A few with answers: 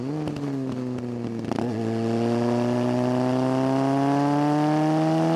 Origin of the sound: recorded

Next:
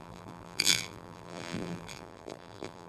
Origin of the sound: remade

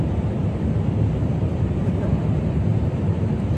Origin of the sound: recorded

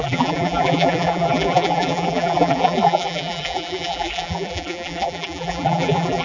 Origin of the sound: remade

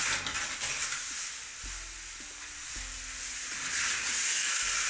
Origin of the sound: recorded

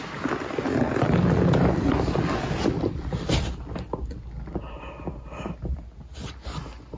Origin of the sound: recorded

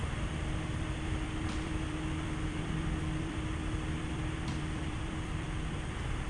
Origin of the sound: remade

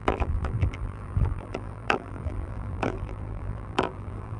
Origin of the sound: remade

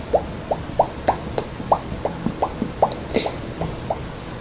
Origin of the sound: recorded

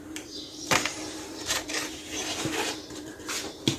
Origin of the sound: remade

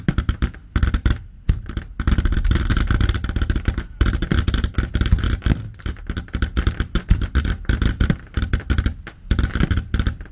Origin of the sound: recorded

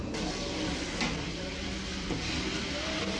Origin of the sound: recorded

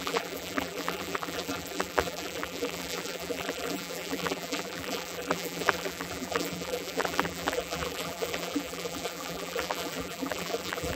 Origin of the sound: remade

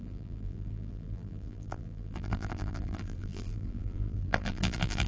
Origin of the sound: remade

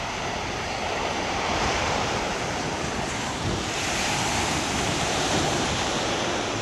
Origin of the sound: remade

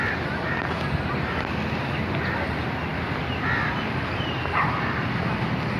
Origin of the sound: remade